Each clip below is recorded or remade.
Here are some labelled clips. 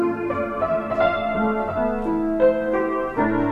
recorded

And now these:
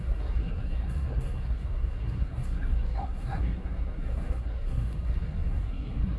remade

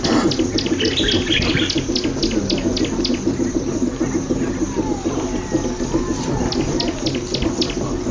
recorded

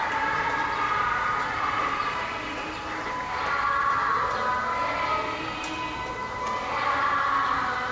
recorded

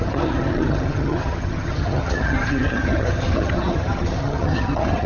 remade